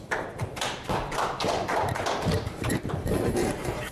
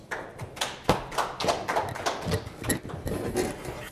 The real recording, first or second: second